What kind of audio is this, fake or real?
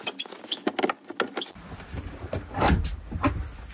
real